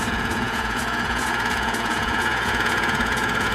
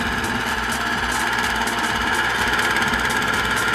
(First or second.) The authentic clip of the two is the second